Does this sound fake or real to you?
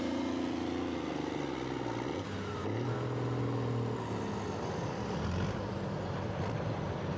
real